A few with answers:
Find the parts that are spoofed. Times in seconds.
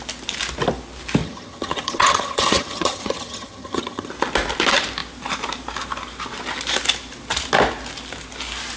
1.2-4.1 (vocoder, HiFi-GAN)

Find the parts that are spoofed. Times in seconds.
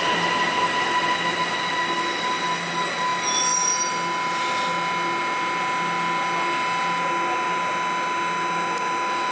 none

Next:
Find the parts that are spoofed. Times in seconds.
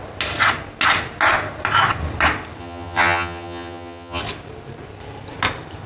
2.6-4.2 (vocoder, HiFi-GAN)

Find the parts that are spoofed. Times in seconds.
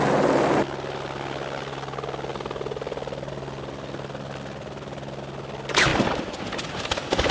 none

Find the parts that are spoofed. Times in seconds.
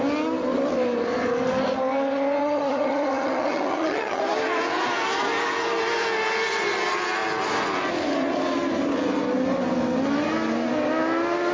2.4-4.2 (vocoder, HiFi-GAN)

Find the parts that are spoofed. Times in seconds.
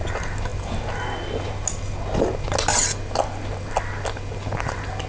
none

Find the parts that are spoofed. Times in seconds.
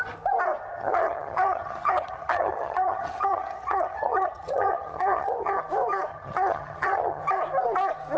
0.7-5.6 (vocoder, HiFi-GAN); 6.1-7.2